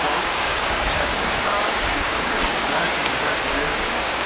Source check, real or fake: fake